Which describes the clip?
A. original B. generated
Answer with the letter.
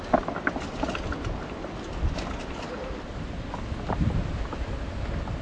A